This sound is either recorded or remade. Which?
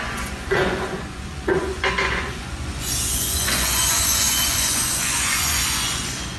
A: remade